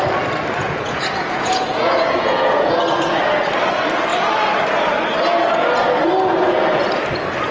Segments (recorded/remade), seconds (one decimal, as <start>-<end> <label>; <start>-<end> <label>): 0.0-0.6 recorded; 0.6-2.8 remade; 2.8-7.5 recorded